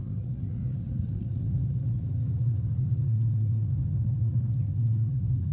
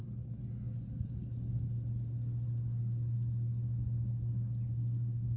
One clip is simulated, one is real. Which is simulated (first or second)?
first